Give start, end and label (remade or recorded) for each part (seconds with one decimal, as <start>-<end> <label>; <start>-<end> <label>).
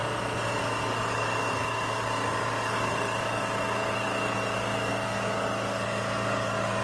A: 0.0-0.6 recorded; 0.6-6.8 remade